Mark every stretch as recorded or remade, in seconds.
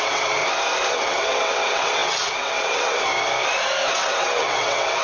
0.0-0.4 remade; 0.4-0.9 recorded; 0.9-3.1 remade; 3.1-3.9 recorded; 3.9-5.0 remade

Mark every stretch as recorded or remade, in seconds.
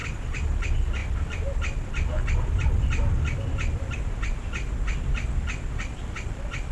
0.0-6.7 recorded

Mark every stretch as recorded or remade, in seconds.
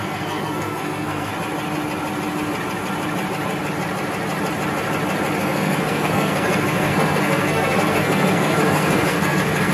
0.0-1.3 remade; 1.3-5.4 recorded; 5.4-9.7 remade